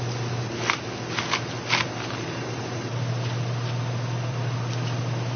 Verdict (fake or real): real